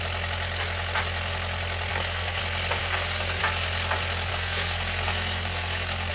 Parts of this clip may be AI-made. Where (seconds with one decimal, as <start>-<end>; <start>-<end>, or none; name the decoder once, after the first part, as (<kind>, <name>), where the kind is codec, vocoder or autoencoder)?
1.9-2.4 (codec, SNAC); 2.8-3.4; 4.3-6.1